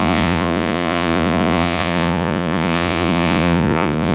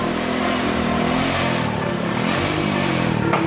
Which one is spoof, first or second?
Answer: first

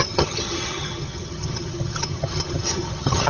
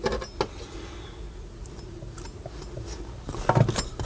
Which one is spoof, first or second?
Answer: first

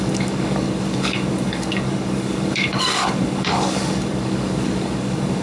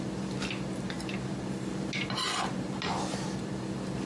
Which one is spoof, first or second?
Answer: first